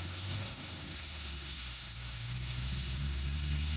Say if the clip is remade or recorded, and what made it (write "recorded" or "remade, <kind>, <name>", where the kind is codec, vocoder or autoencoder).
remade, codec, SNAC